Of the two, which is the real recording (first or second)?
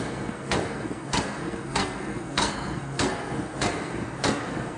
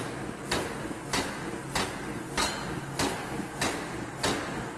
second